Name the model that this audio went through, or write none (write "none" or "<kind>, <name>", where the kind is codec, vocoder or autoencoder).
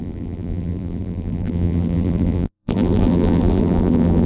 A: vocoder, BigVGAN v2